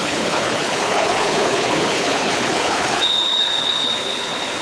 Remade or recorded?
remade